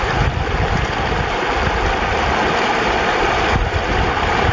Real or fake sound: real